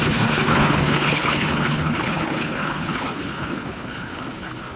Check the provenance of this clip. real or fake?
fake